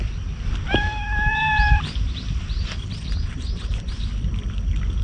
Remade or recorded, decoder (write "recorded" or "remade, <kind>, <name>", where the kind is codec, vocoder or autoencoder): remade, vocoder, BigVGAN v2